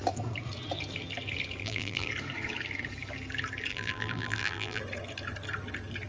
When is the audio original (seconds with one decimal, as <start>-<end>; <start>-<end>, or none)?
0.0-1.6; 2.1-3.7; 4.8-6.1